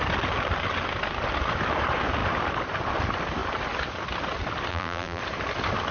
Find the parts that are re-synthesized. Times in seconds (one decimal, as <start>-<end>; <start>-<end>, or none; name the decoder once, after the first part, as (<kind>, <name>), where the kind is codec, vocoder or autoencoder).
4.7-5.2 (vocoder, BigVGAN v2)